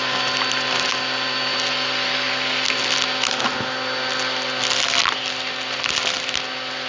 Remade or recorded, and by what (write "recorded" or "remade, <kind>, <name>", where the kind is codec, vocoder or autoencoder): recorded